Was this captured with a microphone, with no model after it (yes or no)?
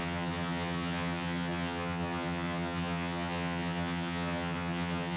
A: no